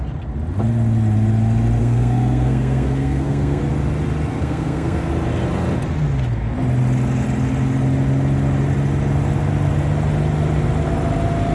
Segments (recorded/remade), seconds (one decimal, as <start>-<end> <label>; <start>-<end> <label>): 0.0-1.8 recorded; 1.8-3.6 remade; 3.6-4.3 recorded; 4.3-5.1 remade; 5.1-11.5 recorded